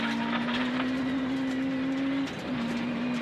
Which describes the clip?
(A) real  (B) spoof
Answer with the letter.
A